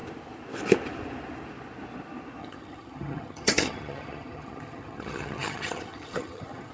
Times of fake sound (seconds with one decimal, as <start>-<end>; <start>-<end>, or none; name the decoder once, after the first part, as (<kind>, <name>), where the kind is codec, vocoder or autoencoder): 2.4-6.7 (vocoder, HiFi-GAN)